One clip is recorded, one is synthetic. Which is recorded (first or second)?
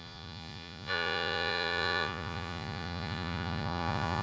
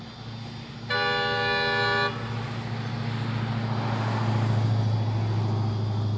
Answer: second